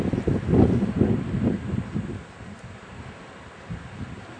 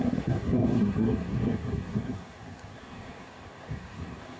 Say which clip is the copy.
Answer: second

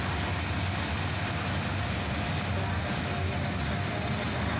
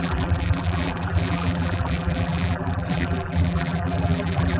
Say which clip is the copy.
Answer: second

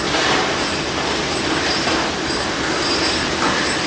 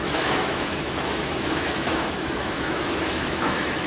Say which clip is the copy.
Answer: second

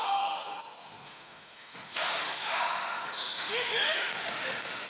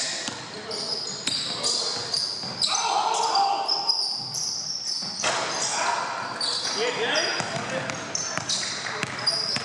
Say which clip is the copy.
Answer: first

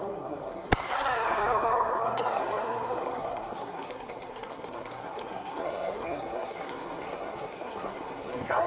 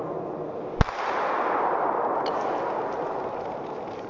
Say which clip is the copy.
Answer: first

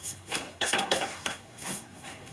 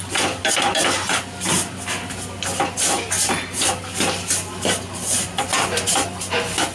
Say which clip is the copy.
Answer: first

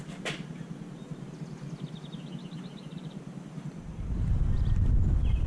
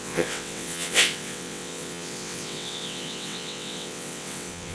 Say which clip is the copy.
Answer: second